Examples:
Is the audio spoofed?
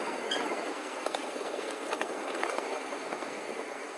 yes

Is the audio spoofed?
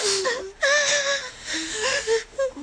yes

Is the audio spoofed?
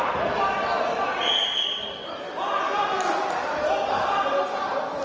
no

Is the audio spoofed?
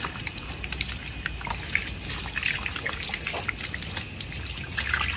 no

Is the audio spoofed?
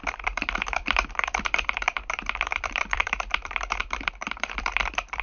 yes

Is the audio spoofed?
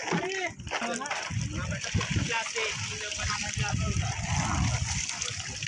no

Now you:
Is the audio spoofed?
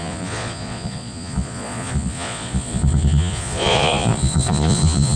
yes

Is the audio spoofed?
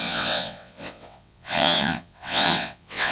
yes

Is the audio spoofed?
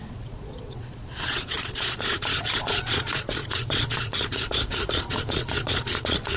yes